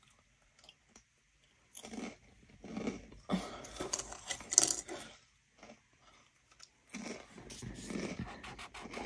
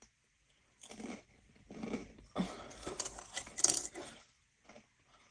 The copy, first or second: second